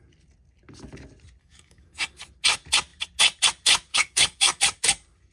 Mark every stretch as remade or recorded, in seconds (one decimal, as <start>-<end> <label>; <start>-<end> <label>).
0.0-1.4 recorded; 1.4-2.2 remade; 2.2-3.9 recorded; 3.9-4.6 remade; 4.6-5.3 recorded